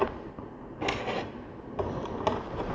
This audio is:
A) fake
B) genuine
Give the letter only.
B